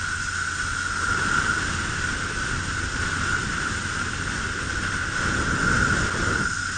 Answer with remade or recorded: recorded